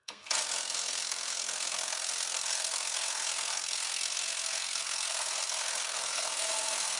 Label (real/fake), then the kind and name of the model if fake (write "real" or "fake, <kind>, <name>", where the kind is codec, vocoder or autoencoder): fake, codec, SNAC